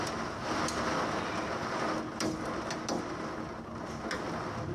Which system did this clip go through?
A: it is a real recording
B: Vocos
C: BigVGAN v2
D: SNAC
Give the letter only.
A